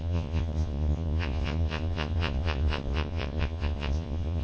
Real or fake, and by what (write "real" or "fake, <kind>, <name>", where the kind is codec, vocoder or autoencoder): fake, vocoder, Vocos